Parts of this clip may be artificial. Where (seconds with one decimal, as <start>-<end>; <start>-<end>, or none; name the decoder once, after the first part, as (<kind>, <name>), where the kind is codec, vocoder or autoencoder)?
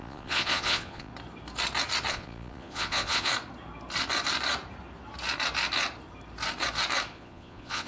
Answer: 0.0-1.1 (vocoder, Vocos); 2.1-3.3; 7.1-7.9